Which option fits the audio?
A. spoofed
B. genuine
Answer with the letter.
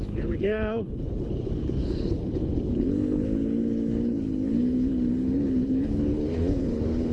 A